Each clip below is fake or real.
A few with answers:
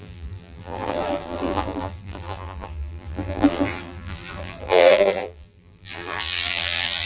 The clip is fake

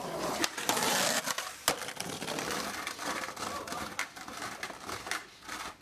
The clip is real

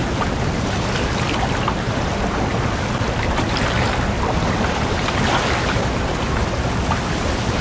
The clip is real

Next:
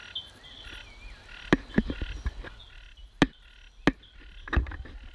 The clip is real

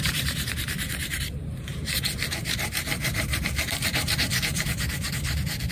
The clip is fake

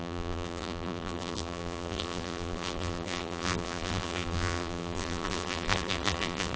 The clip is fake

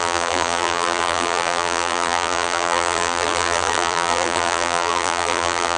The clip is fake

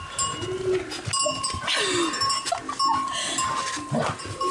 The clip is real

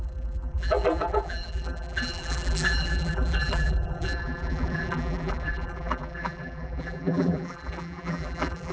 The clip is fake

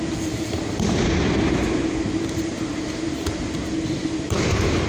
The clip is fake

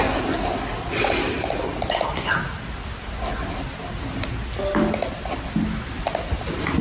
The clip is real